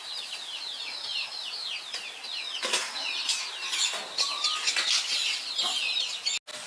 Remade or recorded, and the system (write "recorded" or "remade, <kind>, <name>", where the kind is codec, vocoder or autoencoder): recorded